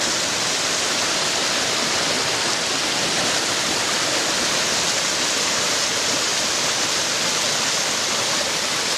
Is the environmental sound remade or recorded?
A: recorded